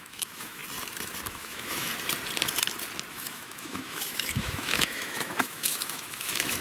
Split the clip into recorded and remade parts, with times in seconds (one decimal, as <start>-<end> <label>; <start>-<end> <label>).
0.0-0.6 remade; 0.6-1.3 recorded; 1.3-1.9 remade; 1.9-3.1 recorded; 3.1-6.6 remade